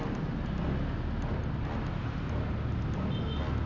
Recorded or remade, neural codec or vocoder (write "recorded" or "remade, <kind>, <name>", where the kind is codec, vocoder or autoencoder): recorded